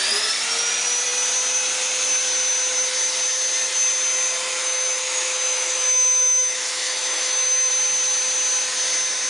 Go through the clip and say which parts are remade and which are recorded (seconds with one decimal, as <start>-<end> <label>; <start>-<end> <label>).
0.0-4.6 recorded; 4.6-7.7 remade; 7.7-9.3 recorded